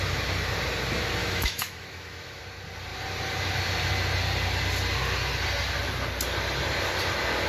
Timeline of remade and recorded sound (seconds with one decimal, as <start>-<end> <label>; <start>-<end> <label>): 0.0-1.2 recorded; 1.2-2.4 remade; 2.4-7.5 recorded